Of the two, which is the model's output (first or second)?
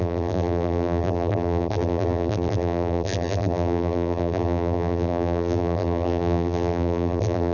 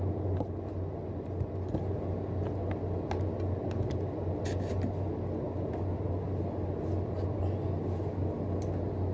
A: first